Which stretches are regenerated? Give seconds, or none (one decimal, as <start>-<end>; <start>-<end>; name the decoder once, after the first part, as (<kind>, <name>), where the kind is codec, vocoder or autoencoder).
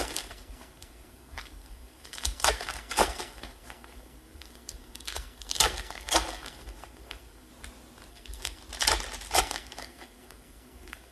0.0-7.5 (codec, SNAC); 8.1-8.6; 9.4-11.1